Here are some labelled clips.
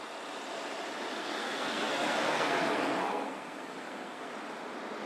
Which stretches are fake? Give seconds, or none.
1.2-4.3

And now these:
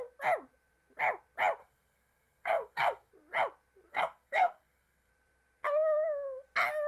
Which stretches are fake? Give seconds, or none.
1.6-3.1; 3.9-5.1

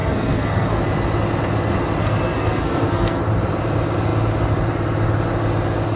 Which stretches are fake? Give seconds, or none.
0.0-0.8; 2.0-3.2

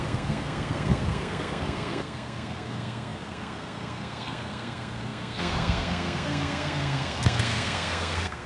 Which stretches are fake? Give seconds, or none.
0.0-8.5